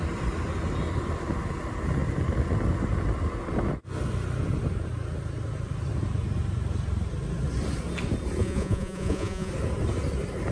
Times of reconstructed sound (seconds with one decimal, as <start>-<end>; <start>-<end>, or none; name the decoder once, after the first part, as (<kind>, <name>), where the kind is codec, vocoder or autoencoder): 8.4-9.5 (vocoder, Vocos)